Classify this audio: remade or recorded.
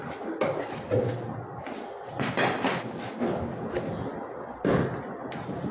recorded